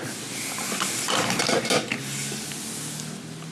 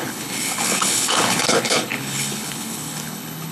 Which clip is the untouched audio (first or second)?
first